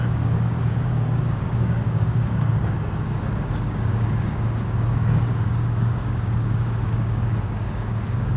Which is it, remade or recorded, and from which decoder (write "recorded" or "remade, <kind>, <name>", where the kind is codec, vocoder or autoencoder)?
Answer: remade, codec, DAC